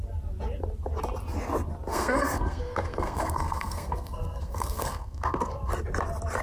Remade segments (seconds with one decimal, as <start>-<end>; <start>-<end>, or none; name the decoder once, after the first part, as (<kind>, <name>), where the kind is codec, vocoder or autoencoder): 1.9-5.7 (codec, SNAC)